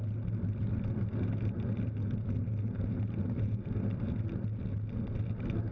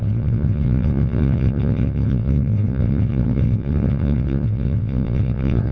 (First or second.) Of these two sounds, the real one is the first